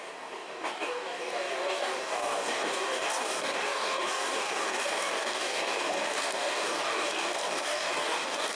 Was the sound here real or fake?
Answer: fake